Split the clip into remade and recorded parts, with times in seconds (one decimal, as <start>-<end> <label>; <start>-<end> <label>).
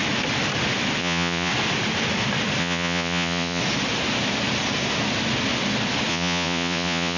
0.0-1.0 recorded; 1.0-1.5 remade; 1.5-2.6 recorded; 2.6-3.6 remade; 3.6-6.1 recorded; 6.1-7.2 remade